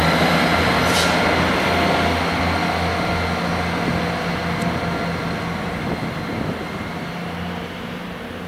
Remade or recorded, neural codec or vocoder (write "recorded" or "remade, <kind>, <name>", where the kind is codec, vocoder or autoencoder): recorded